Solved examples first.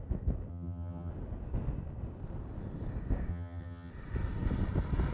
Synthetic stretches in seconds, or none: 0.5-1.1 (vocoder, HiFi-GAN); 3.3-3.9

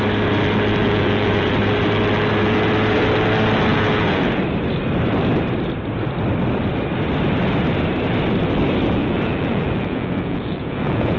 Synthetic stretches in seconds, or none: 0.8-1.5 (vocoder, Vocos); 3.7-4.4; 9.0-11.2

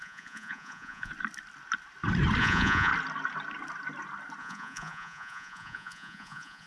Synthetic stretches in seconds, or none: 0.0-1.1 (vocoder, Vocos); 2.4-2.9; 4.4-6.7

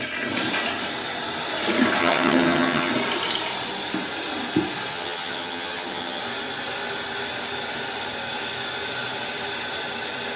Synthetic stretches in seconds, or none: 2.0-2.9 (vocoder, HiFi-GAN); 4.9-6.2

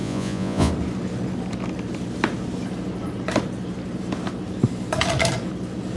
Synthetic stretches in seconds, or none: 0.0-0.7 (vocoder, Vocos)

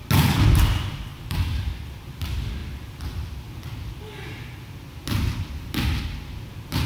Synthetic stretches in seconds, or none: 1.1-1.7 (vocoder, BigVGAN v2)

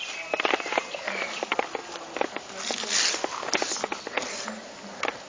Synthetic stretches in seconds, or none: none

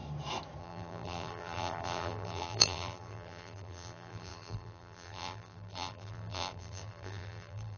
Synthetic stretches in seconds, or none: 0.6-7.8 (vocoder, BigVGAN v2)